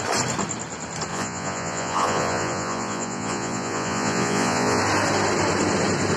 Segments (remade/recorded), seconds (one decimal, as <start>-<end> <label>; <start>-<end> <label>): 0.0-1.1 recorded; 1.1-4.8 remade; 4.8-6.2 recorded